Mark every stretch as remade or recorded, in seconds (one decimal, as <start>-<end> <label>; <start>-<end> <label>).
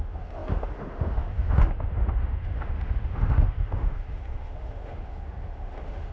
0.0-6.1 remade